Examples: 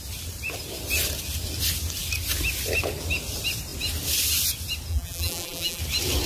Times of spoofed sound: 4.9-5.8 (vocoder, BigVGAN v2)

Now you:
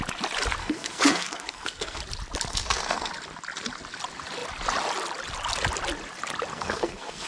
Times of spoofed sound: 0.6-2.0 (codec, SNAC); 2.5-3.1; 6.5-7.3

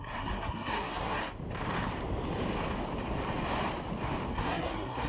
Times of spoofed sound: 0.0-1.2 (codec, SNAC); 4.3-5.1

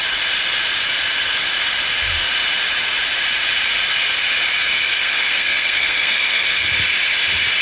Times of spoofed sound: 4.6-6.6 (codec, SNAC)